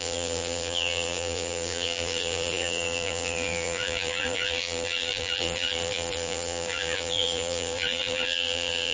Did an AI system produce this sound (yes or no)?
yes